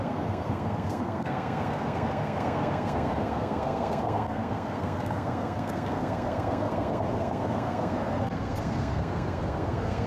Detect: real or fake fake